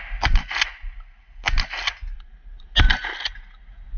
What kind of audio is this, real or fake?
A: real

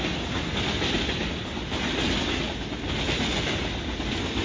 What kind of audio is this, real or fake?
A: real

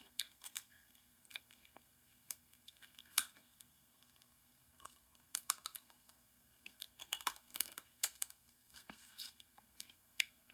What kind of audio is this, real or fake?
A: fake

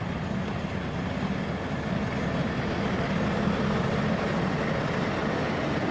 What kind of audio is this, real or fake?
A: real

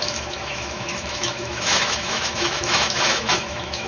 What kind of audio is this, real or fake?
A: fake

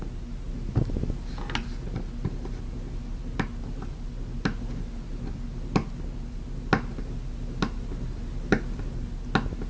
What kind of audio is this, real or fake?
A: real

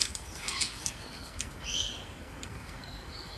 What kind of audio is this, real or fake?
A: fake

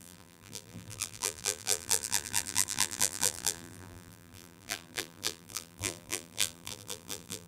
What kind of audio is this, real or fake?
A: fake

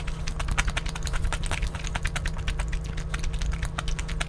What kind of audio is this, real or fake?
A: real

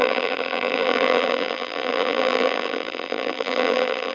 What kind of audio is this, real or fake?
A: fake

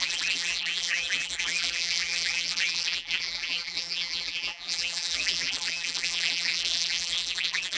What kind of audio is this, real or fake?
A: fake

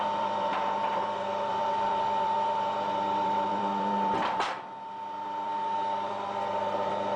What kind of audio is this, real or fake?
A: fake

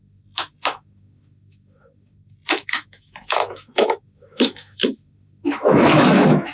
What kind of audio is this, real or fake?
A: fake